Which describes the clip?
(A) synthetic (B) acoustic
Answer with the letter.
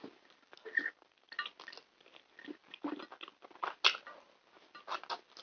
B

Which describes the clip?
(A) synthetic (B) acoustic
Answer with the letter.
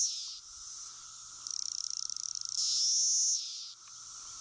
B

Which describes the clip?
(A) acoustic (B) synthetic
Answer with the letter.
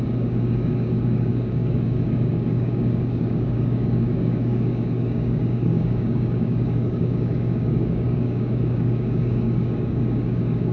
B